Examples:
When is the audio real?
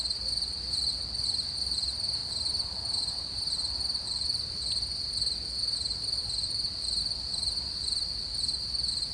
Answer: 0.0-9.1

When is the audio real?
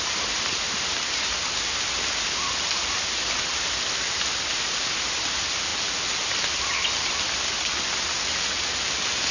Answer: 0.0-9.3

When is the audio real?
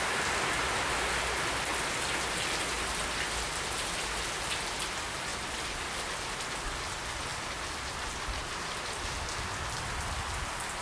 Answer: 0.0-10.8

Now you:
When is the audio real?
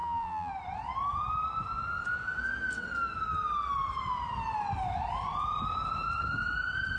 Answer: 0.5-7.0